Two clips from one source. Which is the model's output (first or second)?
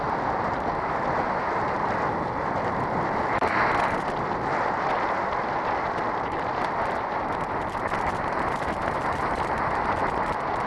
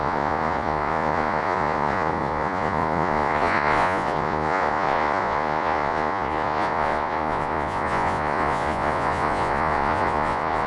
second